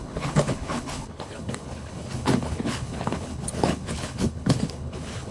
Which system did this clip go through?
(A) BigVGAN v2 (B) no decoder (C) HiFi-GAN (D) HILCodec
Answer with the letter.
D